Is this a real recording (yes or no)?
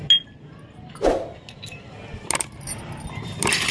yes